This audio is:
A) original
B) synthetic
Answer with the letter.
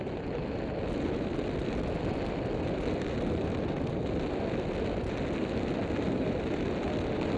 A